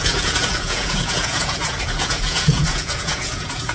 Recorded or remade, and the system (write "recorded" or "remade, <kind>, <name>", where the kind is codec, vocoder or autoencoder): remade, vocoder, Vocos